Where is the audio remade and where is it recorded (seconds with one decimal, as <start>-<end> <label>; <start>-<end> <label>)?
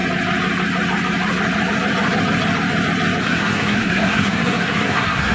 0.0-3.2 recorded; 3.2-5.3 remade